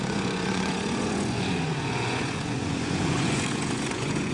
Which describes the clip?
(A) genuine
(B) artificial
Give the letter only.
B